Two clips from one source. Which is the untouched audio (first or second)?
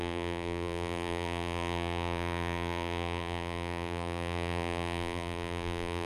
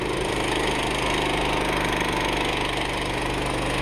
second